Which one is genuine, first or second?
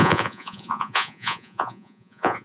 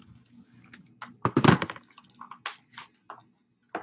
second